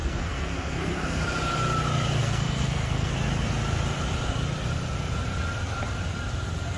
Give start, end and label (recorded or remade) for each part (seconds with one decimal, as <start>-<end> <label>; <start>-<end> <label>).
0.0-1.2 remade; 1.2-2.2 recorded; 2.2-3.1 remade; 3.1-6.8 recorded